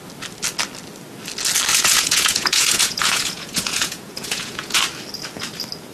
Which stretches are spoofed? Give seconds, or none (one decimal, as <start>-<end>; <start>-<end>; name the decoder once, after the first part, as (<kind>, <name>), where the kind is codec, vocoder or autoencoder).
1.7-4.8 (vocoder, Vocos)